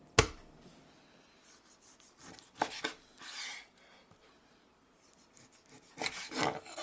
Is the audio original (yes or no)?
yes